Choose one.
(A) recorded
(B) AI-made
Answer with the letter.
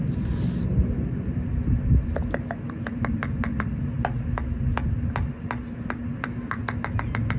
A